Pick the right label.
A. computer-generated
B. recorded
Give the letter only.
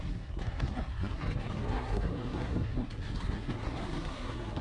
A